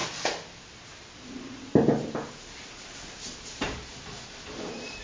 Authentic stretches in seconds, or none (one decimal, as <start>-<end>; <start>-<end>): 0.0-2.6